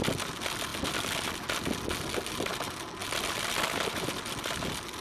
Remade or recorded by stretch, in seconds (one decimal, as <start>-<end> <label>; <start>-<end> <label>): 0.0-5.0 recorded